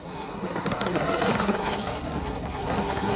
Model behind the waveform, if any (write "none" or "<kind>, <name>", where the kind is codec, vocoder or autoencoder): codec, SNAC